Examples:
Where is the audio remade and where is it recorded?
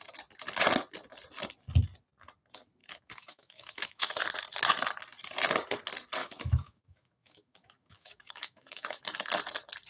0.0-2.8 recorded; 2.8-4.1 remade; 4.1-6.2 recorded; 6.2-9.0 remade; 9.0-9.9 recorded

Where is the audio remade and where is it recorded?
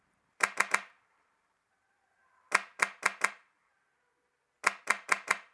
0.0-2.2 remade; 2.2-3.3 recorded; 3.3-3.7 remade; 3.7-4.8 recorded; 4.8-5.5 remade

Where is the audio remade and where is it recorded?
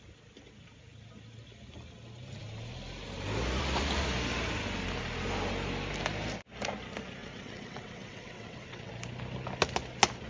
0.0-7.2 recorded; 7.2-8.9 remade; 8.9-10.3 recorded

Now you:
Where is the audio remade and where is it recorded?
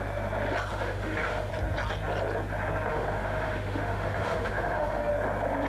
0.0-0.7 recorded; 0.7-1.5 remade; 1.5-2.9 recorded; 2.9-5.1 remade; 5.1-5.7 recorded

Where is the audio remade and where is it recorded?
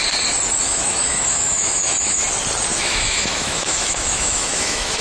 0.0-0.6 recorded; 0.6-2.2 remade; 2.2-2.7 recorded; 2.7-5.0 remade